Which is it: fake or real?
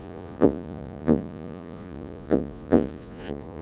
fake